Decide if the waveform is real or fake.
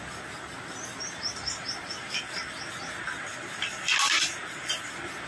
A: real